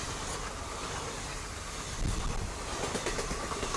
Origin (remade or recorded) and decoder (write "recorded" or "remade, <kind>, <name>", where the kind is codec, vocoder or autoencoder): recorded